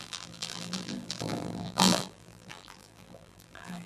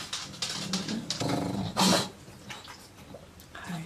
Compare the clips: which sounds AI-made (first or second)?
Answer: first